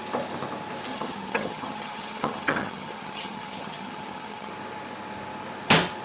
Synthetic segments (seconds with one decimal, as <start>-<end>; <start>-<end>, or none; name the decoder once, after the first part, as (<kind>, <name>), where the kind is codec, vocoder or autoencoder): 0.9-4.5 (vocoder, HiFi-GAN)